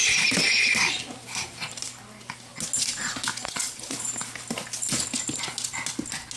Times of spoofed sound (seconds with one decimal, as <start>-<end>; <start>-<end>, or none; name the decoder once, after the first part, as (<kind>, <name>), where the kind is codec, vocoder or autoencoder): none